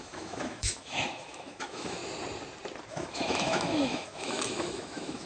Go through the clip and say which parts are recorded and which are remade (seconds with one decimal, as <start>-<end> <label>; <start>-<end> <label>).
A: 0.0-2.0 remade; 2.0-2.9 recorded; 2.9-5.3 remade